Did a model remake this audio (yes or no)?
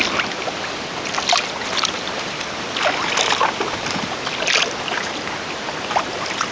no